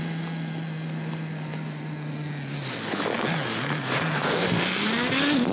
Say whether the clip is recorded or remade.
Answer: recorded